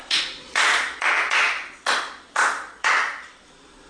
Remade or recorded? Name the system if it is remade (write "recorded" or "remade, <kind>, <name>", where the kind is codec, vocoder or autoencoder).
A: remade, vocoder, Vocos